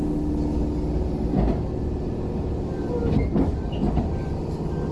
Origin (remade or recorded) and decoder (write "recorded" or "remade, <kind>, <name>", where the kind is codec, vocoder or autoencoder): recorded